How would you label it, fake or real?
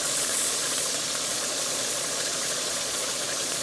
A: fake